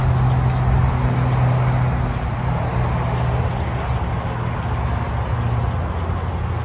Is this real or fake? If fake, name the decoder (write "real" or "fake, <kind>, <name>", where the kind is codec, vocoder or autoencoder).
real